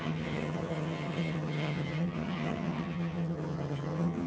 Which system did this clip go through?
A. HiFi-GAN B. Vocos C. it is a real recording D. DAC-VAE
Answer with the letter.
A